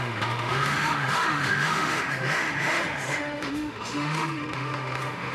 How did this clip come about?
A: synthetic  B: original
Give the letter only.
A